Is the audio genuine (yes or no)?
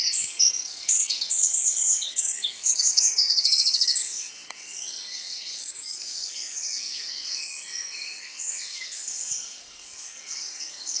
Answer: no